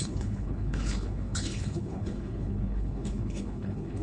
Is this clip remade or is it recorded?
remade